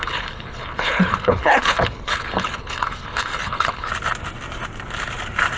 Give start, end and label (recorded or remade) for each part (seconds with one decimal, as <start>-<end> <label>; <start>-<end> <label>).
0.0-3.9 remade; 3.9-5.6 recorded